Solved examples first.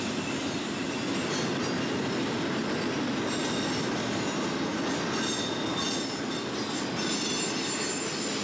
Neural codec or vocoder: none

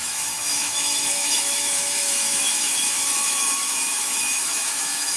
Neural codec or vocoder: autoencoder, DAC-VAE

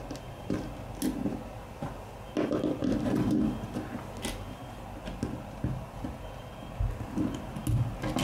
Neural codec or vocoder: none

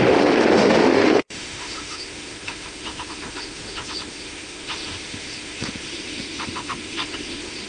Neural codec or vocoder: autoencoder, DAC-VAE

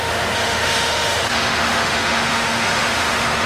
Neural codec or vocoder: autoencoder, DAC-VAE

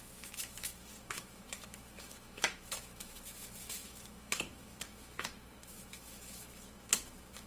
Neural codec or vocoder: autoencoder, DAC-VAE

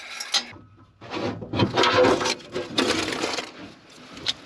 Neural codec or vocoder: none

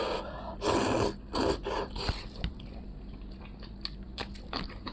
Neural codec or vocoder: none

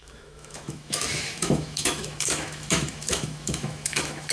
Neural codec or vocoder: autoencoder, DAC-VAE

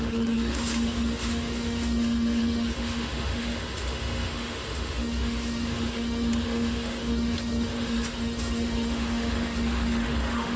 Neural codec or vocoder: autoencoder, DAC-VAE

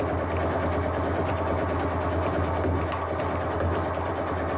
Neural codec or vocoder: none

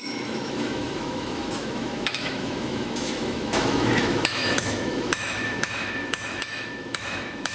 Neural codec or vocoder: autoencoder, DAC-VAE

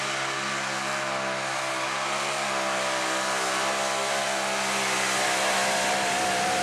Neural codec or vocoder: none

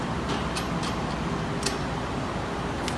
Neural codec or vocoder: none